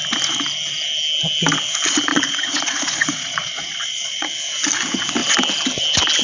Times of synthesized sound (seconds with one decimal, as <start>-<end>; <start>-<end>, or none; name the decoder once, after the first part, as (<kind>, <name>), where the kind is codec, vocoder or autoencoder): 2.1-4.3 (vocoder, Vocos)